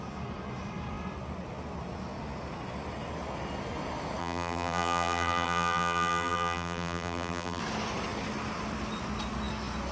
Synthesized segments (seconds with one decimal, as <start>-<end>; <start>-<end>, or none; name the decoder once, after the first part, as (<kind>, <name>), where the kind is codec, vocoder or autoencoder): 4.2-7.6 (vocoder, BigVGAN v2)